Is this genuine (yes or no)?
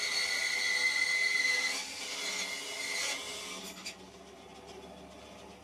yes